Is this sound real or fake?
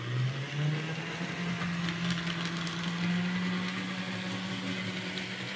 real